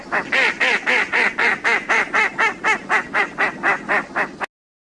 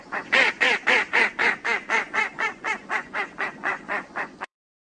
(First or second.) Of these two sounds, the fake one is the second